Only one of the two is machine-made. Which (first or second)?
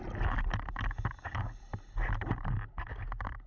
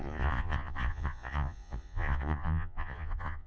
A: second